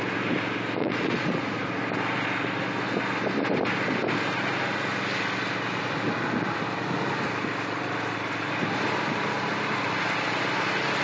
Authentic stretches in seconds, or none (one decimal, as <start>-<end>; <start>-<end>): 0.0-0.8; 1.8-11.0